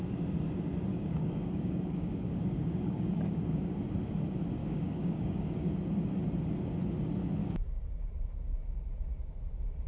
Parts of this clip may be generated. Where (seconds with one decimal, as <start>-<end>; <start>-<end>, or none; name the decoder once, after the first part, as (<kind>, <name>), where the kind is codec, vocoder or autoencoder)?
0.9-3.8 (codec, DAC); 4.6-5.7; 7.4-8.1